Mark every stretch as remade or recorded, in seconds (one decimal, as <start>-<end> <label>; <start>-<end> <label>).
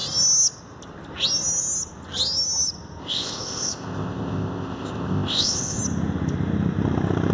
0.0-3.0 recorded; 3.0-5.8 remade; 5.8-7.3 recorded